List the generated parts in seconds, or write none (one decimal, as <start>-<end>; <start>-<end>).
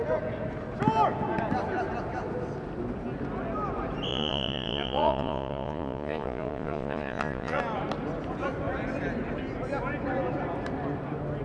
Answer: 4.1-7.6